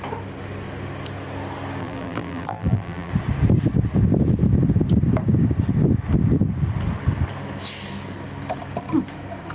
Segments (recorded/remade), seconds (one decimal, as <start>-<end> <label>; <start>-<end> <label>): 0.0-1.8 recorded; 1.8-3.1 remade; 3.1-9.5 recorded